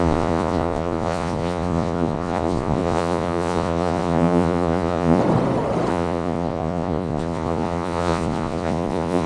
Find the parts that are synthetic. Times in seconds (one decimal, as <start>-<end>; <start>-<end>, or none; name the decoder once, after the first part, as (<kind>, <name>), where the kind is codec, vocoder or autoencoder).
0.0-5.2 (vocoder, Vocos); 5.9-9.3